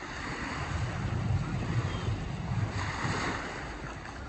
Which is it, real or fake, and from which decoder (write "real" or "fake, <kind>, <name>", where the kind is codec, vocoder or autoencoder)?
real